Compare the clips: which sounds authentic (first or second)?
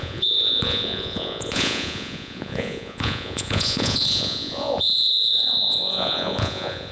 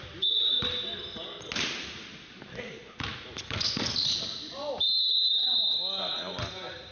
second